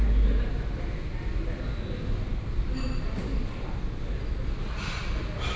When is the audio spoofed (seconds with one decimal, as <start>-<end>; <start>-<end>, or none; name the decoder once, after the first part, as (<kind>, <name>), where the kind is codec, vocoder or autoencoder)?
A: none